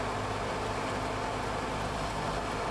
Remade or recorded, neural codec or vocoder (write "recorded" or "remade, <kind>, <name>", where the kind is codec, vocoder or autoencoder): recorded